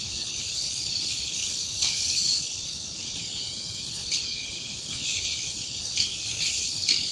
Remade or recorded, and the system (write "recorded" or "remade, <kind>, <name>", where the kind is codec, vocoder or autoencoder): remade, codec, HILCodec